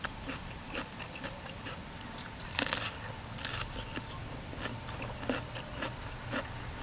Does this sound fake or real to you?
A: real